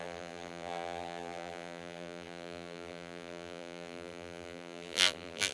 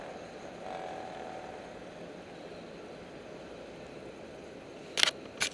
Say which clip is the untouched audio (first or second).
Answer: second